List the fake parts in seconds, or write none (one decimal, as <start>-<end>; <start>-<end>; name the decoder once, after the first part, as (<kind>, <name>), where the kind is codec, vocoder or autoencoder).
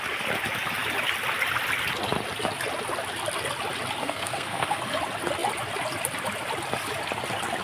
4.0-4.8 (codec, SNAC)